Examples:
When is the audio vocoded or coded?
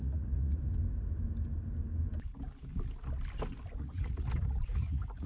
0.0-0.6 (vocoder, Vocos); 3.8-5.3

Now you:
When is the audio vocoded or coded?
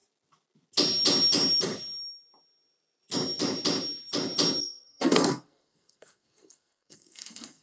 4.6-7.6 (codec, SNAC)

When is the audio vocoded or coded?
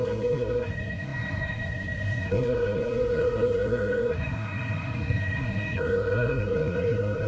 0.0-7.3 (codec, SNAC)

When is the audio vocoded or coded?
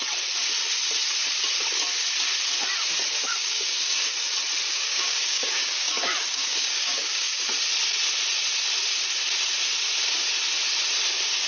3.4-4.1 (codec, DAC); 4.7-7.4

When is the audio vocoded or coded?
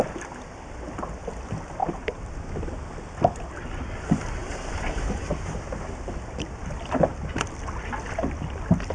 1.8-2.4 (vocoder, BigVGAN v2)